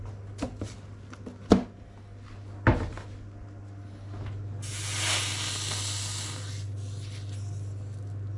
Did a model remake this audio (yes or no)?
no